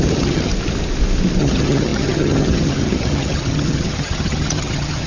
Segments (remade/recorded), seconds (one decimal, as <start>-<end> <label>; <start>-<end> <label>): 0.0-0.5 remade; 0.5-1.4 recorded; 1.4-5.1 remade